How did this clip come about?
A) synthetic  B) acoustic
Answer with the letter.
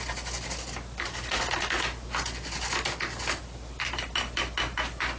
B